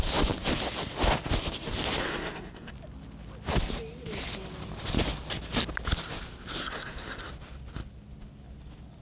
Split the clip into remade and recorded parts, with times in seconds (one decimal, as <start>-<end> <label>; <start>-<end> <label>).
0.0-2.0 recorded; 2.0-2.7 remade; 2.7-6.6 recorded; 6.6-7.3 remade; 7.3-9.0 recorded